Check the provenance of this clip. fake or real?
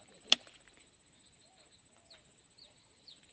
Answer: real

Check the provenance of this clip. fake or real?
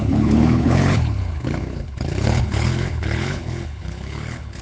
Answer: fake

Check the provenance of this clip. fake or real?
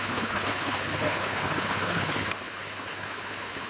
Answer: fake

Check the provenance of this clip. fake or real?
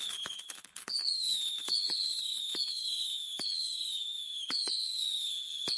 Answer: fake